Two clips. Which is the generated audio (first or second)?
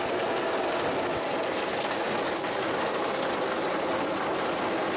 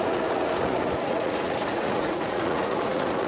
second